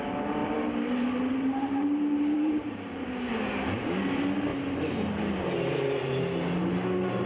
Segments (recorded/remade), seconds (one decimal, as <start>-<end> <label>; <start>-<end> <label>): 0.0-0.4 recorded; 0.4-3.3 remade; 3.3-4.5 recorded; 4.5-5.2 remade; 5.2-7.3 recorded